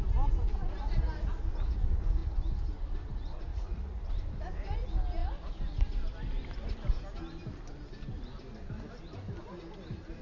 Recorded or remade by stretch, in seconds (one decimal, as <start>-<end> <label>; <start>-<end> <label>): 0.0-3.5 recorded; 3.5-4.1 remade; 4.1-10.2 recorded